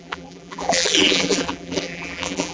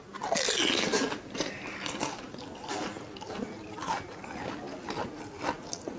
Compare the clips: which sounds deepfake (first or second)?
first